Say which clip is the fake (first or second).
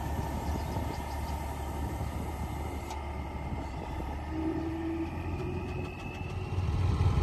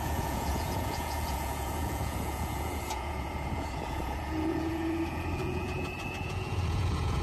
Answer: second